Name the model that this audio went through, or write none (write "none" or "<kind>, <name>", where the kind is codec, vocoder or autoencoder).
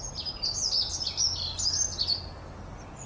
none